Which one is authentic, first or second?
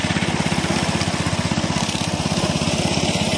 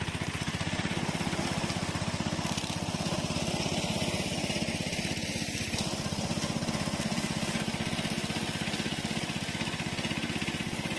second